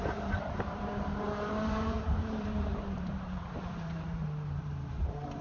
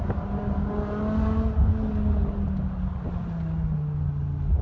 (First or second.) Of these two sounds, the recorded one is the second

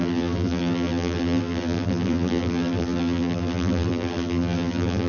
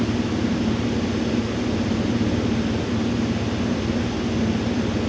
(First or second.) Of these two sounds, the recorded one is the second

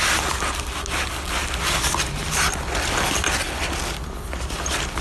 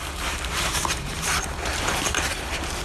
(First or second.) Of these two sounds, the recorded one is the first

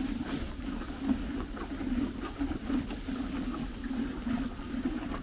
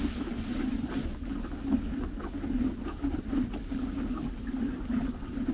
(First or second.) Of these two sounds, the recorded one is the second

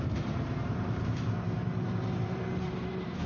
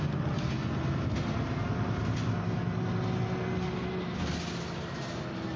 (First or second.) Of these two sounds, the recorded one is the second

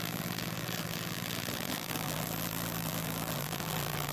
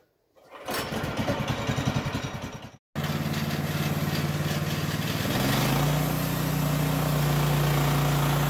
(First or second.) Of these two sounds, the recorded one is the second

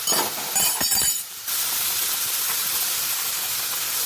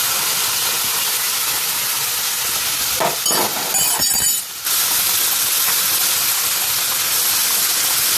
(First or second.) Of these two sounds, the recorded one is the second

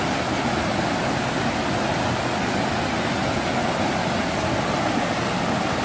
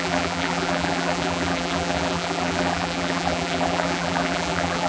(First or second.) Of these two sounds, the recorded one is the first